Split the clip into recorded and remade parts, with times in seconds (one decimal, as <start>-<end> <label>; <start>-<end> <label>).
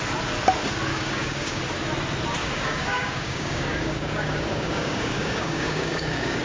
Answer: 0.0-0.9 recorded; 0.9-1.6 remade; 1.6-2.4 recorded; 2.4-6.4 remade